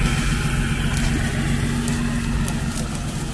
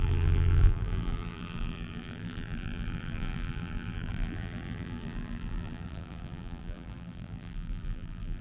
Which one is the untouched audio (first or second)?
first